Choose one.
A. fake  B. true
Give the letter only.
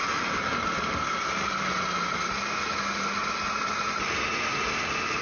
B